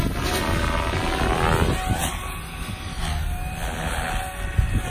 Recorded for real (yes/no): yes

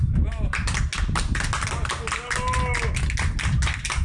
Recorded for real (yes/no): yes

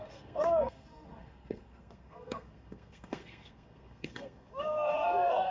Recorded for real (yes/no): no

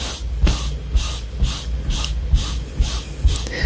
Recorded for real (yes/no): yes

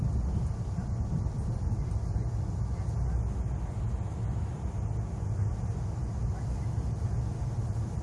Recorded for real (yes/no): yes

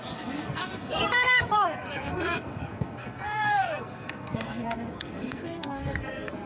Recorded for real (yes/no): no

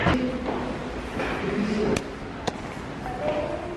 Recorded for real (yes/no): yes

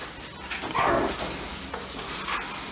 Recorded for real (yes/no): yes